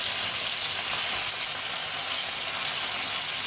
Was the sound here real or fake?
real